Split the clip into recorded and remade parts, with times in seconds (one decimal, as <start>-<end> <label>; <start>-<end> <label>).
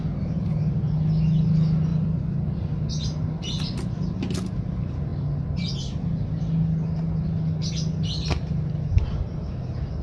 0.0-1.9 recorded; 1.9-2.8 remade; 2.8-10.0 recorded